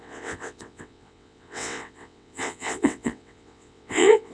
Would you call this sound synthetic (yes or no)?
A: yes